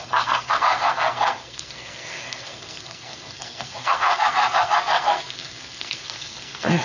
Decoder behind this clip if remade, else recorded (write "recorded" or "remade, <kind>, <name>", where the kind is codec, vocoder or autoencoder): remade, codec, SNAC